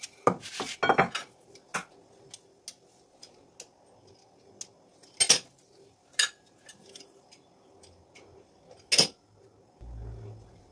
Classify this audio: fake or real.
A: real